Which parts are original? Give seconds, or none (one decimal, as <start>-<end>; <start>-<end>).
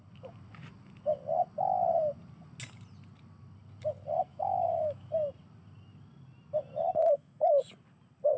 0.0-4.3; 5.1-7.0; 7.5-8.4